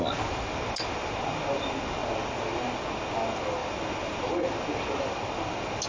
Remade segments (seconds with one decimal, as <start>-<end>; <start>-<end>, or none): none